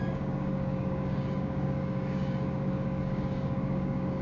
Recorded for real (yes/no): no